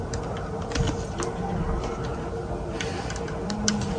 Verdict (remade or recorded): recorded